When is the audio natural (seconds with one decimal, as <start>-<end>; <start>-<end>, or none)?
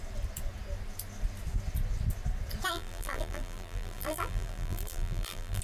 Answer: 0.0-2.7